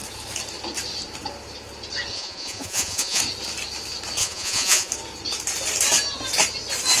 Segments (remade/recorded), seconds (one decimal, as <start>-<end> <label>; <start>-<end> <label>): 0.0-2.1 recorded; 2.1-3.2 remade; 3.2-4.2 recorded; 4.2-4.9 remade; 4.9-7.0 recorded